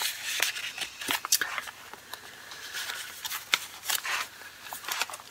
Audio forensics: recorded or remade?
recorded